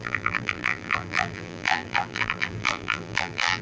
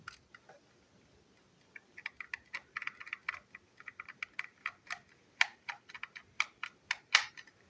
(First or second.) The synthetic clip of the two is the first